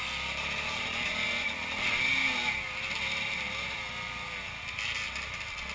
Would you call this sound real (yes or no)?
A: yes